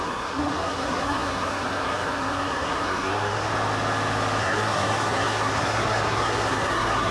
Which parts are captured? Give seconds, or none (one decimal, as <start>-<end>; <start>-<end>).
3.5-4.4